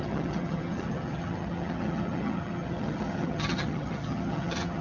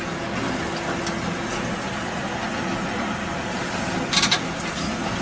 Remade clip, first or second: first